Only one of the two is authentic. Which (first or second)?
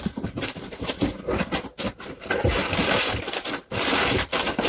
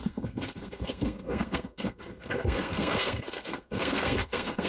first